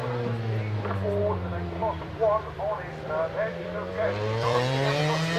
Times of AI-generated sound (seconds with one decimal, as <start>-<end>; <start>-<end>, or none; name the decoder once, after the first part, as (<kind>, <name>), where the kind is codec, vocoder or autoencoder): 1.8-5.0 (vocoder, BigVGAN v2)